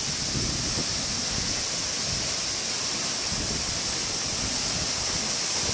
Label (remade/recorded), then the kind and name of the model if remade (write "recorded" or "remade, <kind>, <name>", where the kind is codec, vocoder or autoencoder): recorded